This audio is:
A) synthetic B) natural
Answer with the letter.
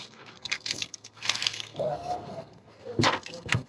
A